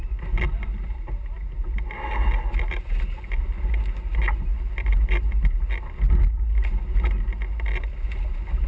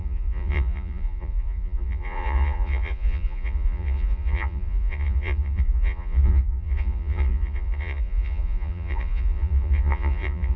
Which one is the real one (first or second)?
first